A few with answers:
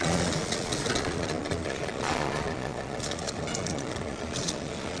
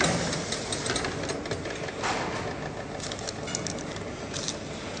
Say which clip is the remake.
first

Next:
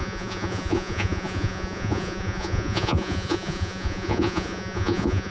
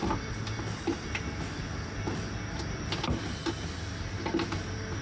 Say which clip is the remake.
first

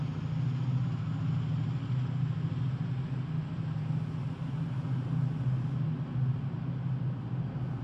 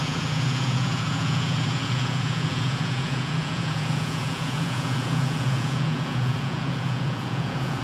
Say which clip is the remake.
second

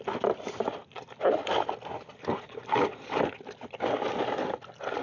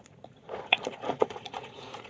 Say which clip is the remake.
second